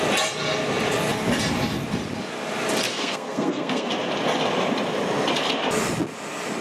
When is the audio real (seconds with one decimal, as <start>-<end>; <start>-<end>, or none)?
0.0-2.9; 3.9-6.6